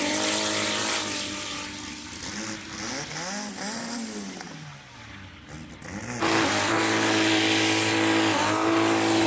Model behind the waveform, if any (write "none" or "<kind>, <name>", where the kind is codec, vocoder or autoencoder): none